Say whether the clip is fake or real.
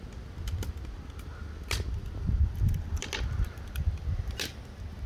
real